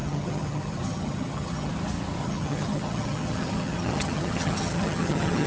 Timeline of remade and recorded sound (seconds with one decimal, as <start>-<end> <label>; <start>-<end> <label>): 0.0-1.7 remade; 1.7-2.2 recorded; 2.2-5.5 remade